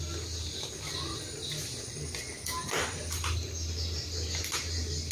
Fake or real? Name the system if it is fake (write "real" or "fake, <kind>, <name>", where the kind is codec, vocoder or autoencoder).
real